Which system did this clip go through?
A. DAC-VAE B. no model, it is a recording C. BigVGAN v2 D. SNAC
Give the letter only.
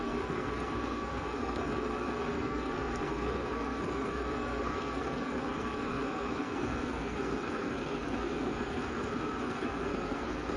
D